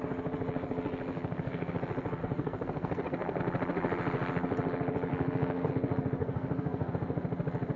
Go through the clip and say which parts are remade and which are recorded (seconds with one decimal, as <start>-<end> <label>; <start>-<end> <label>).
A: 0.0-1.1 recorded; 1.1-1.7 remade; 1.7-2.2 recorded; 2.2-3.4 remade; 3.4-5.1 recorded; 5.1-5.7 remade; 5.7-6.2 recorded; 6.2-6.9 remade; 6.9-7.8 recorded